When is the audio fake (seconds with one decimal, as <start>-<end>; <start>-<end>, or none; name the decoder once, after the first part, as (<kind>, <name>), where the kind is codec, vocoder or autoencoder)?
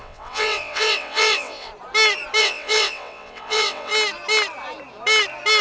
0.0-1.7 (vocoder, WaveNeXt); 2.4-3.9